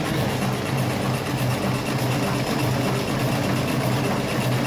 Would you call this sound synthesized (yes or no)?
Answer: no